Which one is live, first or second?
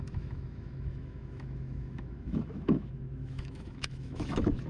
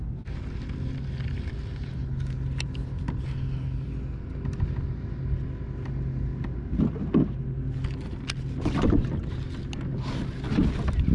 second